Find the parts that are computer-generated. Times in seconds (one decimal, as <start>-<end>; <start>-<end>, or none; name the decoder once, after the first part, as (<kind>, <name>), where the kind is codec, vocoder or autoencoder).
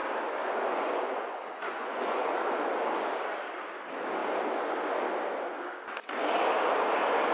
0.4-2.3 (vocoder, Vocos)